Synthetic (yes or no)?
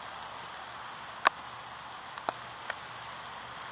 no